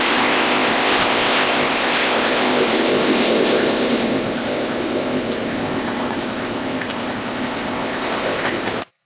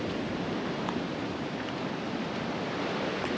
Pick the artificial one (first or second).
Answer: first